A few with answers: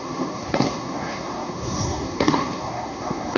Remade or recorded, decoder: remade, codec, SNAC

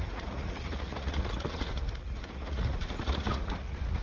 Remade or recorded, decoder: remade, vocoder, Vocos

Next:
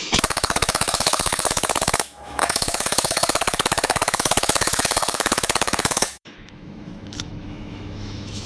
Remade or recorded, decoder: remade, autoencoder, DAC-VAE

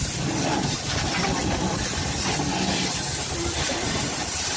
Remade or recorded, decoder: recorded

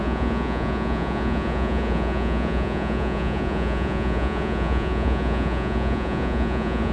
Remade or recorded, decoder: remade, vocoder, Vocos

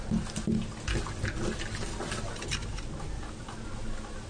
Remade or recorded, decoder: recorded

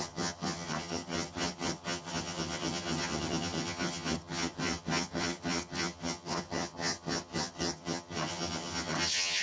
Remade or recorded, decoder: remade, vocoder, HiFi-GAN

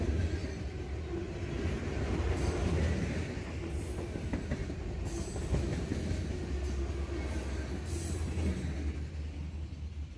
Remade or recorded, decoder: recorded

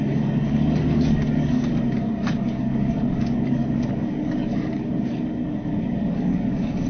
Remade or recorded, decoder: remade, codec, DAC